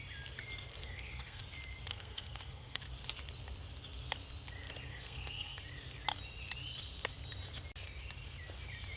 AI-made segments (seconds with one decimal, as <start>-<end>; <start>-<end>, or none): 0.8-1.4; 1.9-2.8; 4.9-5.6